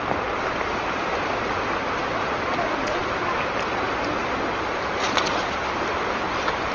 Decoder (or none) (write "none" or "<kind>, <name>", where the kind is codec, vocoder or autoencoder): none